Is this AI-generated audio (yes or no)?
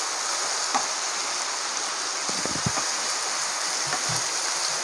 no